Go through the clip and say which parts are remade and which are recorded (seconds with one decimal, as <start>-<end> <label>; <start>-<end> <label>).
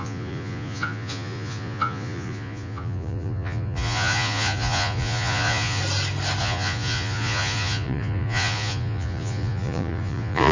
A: 0.0-5.8 remade; 5.8-6.4 recorded; 6.4-10.5 remade